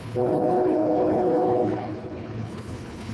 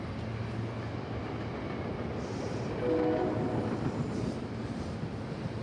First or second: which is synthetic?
first